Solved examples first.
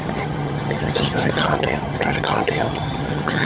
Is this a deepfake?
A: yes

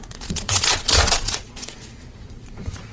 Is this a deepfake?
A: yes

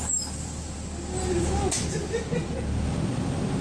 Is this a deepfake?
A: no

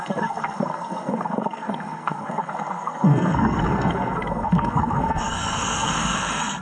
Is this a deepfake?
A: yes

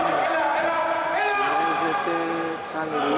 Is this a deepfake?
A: no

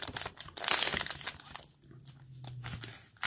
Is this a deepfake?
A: no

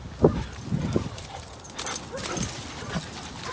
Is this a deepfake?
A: no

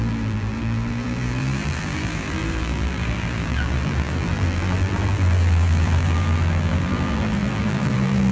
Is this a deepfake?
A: yes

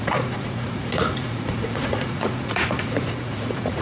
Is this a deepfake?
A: yes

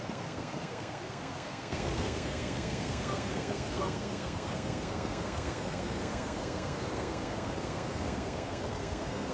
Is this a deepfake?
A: yes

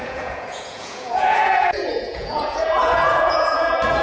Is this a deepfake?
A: yes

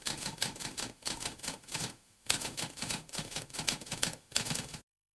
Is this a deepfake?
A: yes